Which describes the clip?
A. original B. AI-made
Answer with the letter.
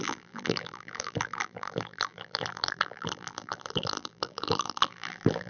B